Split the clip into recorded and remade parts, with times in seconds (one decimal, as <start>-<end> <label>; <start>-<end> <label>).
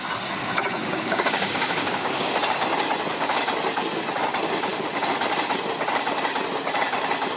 0.0-0.8 recorded; 0.8-2.3 remade; 2.3-7.4 recorded